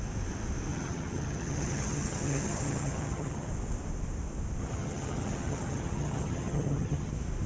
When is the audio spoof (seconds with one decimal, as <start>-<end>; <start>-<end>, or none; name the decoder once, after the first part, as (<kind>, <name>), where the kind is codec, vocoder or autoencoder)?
0.7-3.5 (vocoder, HiFi-GAN); 4.6-7.1

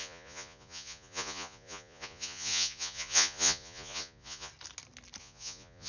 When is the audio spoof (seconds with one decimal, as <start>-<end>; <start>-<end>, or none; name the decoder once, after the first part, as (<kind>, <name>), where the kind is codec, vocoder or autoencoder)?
0.0-4.5 (vocoder, Vocos); 5.2-5.9

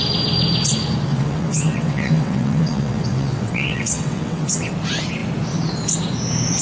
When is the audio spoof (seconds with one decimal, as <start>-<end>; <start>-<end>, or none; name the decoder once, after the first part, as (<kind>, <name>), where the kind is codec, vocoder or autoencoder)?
1.1-4.7 (vocoder, WaveNeXt)

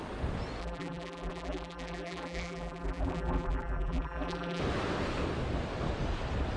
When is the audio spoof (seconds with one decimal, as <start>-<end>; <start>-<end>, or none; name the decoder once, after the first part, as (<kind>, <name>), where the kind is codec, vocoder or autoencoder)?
0.6-4.6 (vocoder, BigVGAN v2)

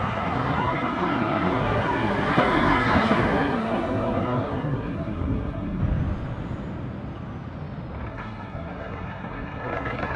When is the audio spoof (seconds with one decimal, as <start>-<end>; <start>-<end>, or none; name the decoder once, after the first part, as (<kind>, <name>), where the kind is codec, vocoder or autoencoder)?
0.0-5.8 (codec, SNAC); 8.1-10.2